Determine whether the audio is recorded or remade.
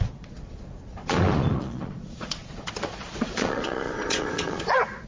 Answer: remade